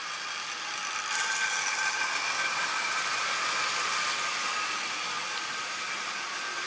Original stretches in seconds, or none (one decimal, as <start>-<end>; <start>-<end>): 0.0-6.7